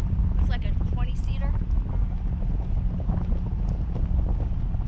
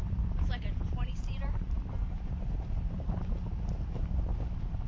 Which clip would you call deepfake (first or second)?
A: second